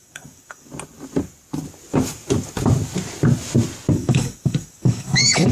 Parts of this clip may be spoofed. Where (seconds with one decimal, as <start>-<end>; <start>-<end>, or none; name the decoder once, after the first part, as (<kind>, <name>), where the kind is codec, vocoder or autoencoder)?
0.0-0.7 (codec, DAC); 3.9-5.5